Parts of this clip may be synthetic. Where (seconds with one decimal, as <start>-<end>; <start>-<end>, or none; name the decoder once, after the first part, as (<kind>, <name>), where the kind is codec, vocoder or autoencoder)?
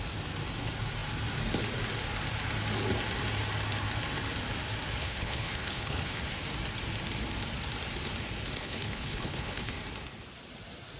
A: 5.0-6.2 (codec, HILCodec); 8.6-9.7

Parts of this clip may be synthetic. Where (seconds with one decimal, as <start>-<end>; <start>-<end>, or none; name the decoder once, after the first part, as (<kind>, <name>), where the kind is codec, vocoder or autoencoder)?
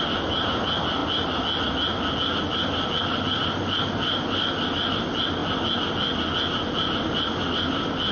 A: none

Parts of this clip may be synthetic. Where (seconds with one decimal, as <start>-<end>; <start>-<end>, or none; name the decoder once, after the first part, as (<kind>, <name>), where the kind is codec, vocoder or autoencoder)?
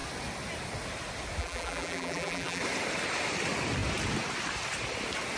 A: 1.4-2.6 (vocoder, BigVGAN v2)